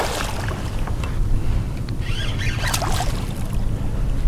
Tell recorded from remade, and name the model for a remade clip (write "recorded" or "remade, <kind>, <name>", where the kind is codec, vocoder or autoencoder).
recorded